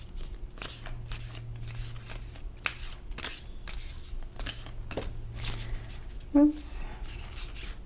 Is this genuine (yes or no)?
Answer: yes